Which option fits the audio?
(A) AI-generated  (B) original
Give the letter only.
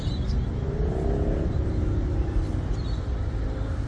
B